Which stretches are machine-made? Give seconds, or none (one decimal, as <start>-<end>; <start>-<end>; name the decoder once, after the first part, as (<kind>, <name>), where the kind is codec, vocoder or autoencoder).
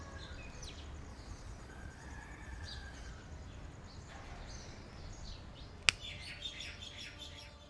1.1-3.1 (vocoder, Vocos)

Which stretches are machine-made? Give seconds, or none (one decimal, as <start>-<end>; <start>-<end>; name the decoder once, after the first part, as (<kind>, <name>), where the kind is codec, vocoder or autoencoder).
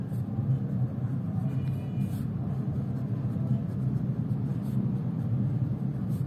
0.0-6.3 (vocoder, BigVGAN v2)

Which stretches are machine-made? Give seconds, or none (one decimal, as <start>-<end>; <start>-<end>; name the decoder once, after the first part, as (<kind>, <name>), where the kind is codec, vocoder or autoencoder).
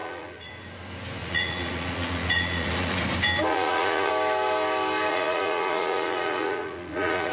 0.0-0.5 (vocoder, Vocos); 1.2-3.0; 3.5-4.1; 5.1-7.3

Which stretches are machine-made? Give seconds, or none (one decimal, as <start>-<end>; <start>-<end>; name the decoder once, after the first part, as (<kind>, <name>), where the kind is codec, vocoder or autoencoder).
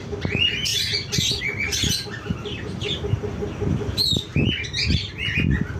none